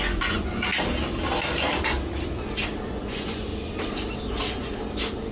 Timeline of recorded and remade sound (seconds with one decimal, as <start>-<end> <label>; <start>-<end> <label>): 0.0-0.7 remade; 0.7-2.9 recorded; 2.9-3.5 remade; 3.5-5.3 recorded